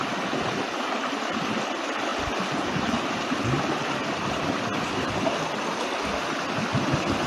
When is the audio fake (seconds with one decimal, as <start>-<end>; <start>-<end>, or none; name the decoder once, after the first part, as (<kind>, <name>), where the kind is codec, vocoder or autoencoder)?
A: none